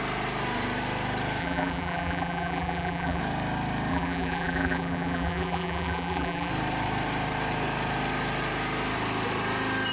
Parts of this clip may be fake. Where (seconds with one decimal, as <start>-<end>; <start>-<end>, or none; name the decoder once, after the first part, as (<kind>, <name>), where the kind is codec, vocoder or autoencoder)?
1.4-3.2 (vocoder, BigVGAN v2); 3.9-6.5